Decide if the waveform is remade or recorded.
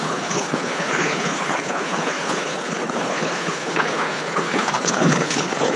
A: remade